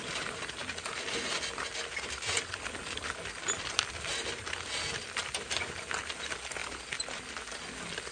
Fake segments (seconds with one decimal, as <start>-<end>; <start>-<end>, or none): none